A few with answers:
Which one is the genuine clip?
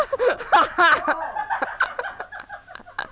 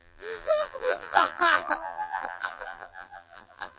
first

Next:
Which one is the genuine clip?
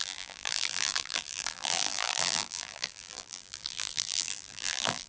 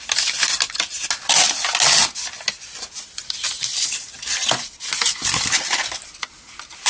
second